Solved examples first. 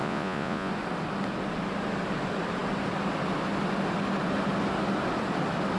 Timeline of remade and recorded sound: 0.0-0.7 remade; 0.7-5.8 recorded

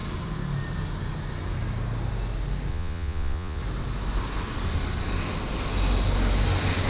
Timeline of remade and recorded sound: 0.0-2.7 recorded; 2.7-3.6 remade; 3.6-6.9 recorded